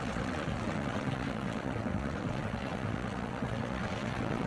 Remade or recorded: remade